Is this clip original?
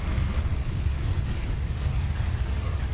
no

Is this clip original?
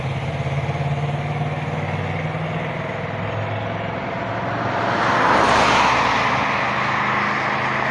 yes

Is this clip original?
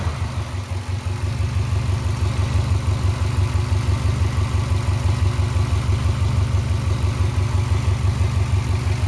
yes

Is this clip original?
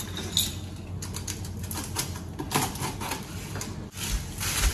yes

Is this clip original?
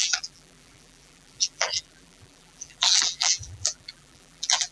no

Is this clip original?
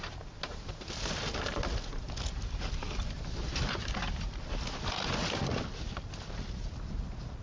yes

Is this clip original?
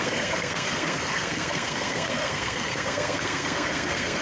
no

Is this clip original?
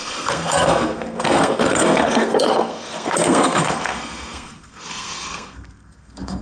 no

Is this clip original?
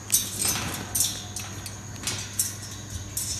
yes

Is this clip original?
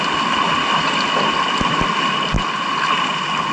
yes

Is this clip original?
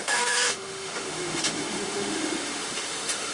no